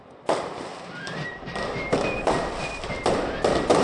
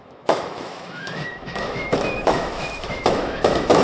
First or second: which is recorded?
first